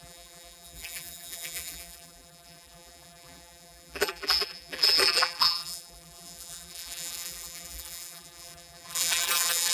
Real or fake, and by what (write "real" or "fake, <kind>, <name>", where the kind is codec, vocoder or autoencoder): fake, vocoder, BigVGAN v2